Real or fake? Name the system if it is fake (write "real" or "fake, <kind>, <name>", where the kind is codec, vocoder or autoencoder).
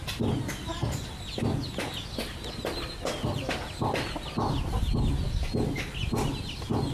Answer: real